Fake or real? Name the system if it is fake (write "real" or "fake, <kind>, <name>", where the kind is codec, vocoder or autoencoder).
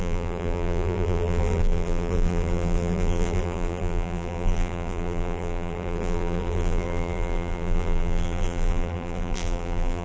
fake, vocoder, BigVGAN v2